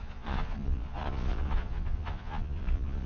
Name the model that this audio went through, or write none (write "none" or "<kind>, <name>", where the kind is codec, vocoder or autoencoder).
vocoder, Vocos